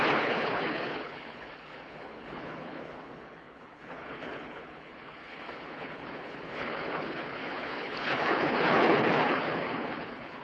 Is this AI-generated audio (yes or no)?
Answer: yes